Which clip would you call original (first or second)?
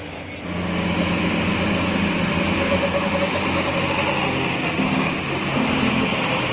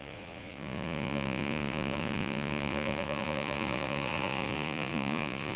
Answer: first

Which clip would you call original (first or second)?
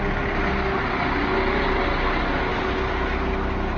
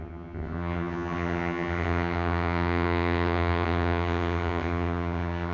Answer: first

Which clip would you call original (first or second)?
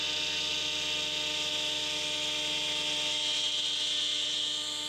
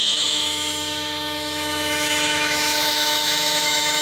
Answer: first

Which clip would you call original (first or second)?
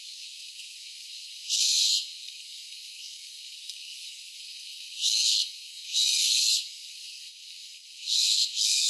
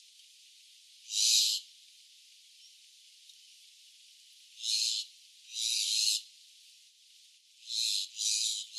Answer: second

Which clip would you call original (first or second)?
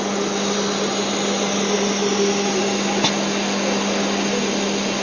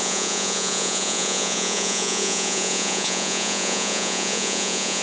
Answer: first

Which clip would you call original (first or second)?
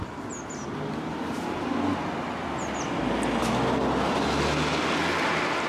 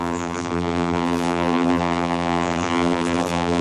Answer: first